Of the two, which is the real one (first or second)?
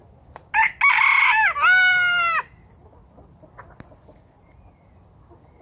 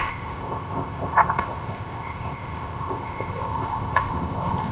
first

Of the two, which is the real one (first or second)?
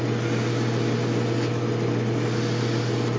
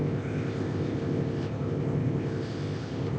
first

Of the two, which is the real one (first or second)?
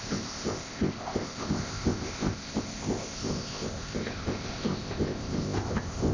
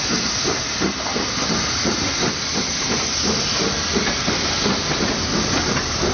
second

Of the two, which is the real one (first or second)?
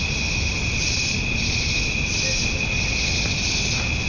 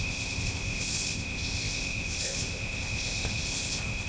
first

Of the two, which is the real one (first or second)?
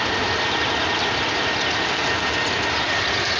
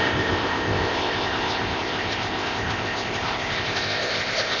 first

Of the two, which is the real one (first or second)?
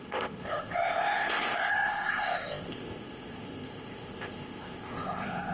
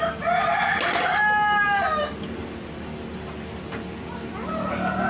second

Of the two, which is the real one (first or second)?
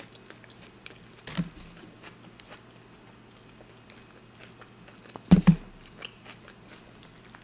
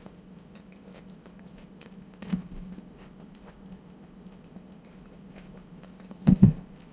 first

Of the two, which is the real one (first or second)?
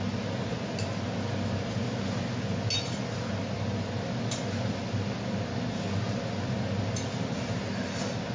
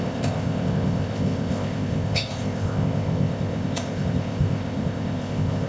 first